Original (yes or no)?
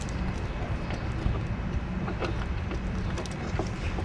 yes